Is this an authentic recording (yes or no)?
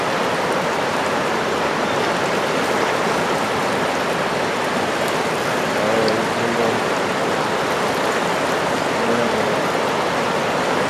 yes